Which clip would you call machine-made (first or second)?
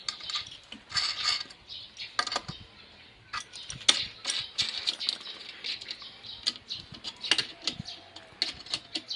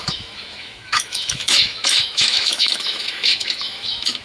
second